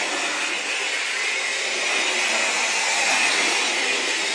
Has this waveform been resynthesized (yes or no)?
no